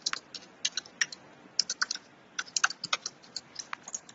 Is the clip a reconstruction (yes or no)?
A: no